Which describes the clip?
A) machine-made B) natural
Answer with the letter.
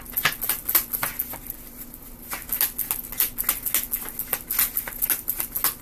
B